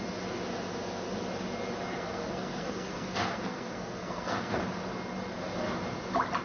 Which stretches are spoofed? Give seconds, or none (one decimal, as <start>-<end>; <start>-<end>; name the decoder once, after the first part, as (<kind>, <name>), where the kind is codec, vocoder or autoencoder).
1.9-4.6 (codec, SNAC)